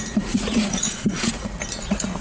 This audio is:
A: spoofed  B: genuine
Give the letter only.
A